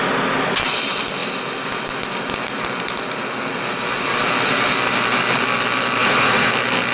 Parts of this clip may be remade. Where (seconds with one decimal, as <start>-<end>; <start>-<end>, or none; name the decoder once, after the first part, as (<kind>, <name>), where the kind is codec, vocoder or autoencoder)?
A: 6.0-6.5 (vocoder, Vocos)